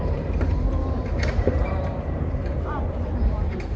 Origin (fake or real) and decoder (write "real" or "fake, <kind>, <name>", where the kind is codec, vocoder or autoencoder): fake, vocoder, BigVGAN v2